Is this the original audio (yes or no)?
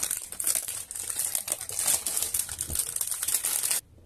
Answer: yes